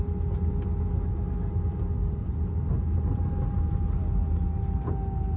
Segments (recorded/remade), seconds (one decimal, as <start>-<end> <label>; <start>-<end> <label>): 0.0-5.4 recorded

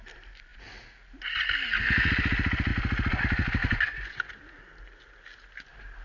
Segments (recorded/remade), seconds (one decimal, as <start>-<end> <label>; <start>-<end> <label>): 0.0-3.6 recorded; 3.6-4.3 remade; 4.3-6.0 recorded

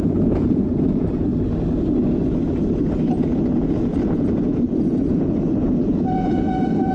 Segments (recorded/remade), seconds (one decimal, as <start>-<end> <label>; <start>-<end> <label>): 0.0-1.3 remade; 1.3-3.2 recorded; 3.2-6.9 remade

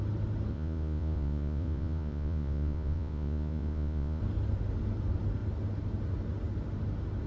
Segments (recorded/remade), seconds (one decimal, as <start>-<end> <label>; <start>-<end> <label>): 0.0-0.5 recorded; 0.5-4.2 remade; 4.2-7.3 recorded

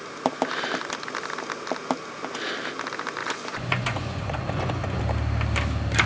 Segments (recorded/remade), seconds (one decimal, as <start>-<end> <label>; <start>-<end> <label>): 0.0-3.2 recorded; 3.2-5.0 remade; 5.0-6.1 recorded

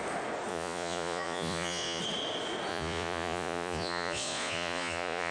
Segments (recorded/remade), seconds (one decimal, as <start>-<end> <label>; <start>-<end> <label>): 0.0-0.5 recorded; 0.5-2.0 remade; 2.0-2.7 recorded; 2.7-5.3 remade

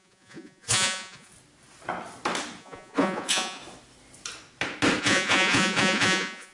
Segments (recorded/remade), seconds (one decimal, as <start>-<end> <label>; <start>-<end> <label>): 0.0-1.3 remade; 1.3-2.6 recorded; 2.6-3.6 remade; 3.6-5.0 recorded; 5.0-6.5 remade

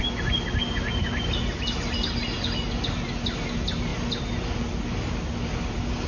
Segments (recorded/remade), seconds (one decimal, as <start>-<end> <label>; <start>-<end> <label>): 0.0-6.1 recorded